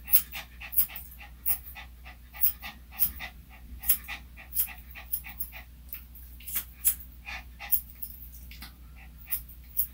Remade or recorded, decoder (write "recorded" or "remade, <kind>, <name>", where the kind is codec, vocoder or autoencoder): recorded